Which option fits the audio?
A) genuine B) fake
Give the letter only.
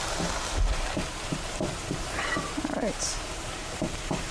B